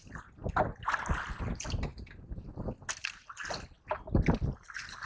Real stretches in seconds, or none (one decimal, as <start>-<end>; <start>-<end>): 0.0-5.1